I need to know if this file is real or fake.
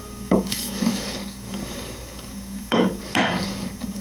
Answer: fake